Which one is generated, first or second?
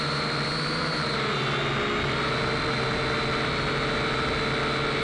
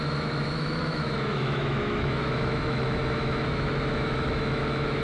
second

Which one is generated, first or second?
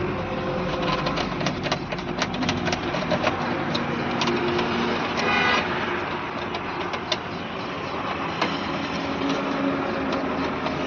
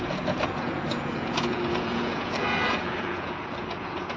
second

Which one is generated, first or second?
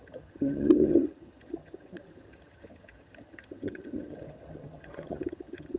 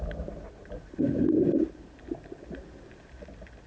first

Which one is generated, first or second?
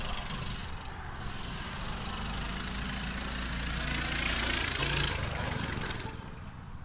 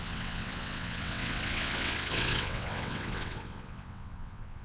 second